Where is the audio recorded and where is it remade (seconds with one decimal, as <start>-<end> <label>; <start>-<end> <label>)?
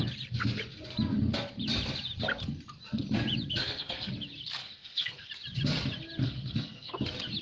0.0-3.6 recorded; 3.6-4.1 remade; 4.1-4.6 recorded; 4.6-5.3 remade; 5.3-6.2 recorded; 6.2-6.9 remade; 6.9-7.4 recorded